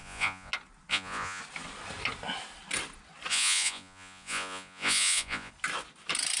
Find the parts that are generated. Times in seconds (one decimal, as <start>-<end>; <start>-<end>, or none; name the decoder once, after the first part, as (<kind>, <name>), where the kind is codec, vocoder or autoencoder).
0.0-0.5 (vocoder, Vocos); 0.9-1.4; 3.3-5.5